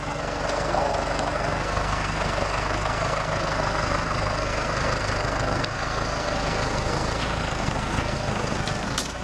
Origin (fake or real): fake